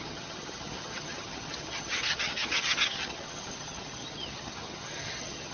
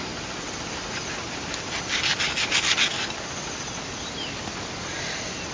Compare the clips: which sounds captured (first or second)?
second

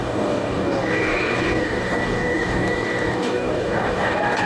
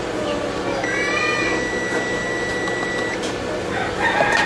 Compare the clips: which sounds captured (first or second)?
second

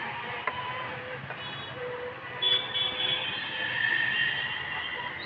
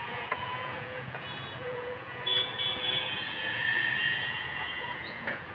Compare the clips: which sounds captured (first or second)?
first